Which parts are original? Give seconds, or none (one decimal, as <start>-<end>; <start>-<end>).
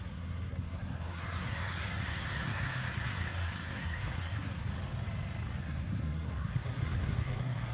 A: 4.7-5.6